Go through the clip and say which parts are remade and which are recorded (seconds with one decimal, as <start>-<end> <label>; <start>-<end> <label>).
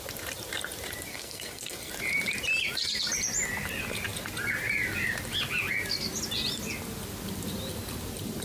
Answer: 0.0-1.1 recorded; 1.1-1.9 remade; 1.9-8.4 recorded